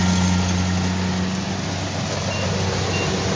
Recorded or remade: recorded